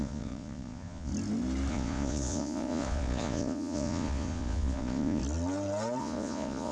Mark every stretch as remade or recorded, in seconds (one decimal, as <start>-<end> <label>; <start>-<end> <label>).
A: 0.0-1.1 remade; 1.1-1.7 recorded; 1.7-5.2 remade; 5.2-6.0 recorded; 6.0-6.7 remade